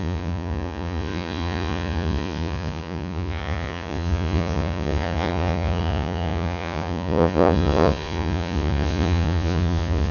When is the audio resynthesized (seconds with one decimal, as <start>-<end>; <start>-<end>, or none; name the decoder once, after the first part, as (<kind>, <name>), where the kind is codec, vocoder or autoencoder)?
0.0-10.1 (vocoder, Vocos)